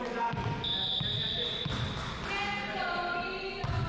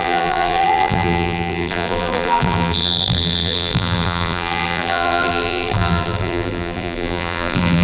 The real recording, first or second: first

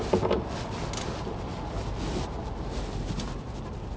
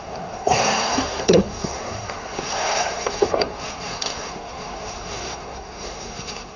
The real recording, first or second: first